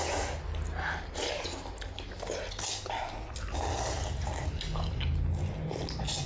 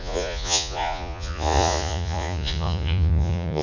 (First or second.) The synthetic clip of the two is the second